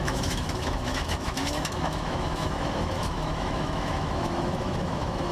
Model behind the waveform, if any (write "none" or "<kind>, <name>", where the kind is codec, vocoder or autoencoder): autoencoder, DAC-VAE